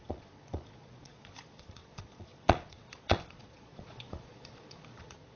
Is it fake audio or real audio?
fake